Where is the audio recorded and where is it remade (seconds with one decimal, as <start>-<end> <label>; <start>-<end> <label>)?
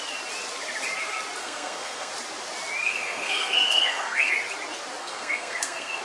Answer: 0.0-1.4 recorded; 1.4-2.1 remade; 2.1-2.8 recorded; 2.8-4.3 remade; 4.3-5.0 recorded; 5.0-6.0 remade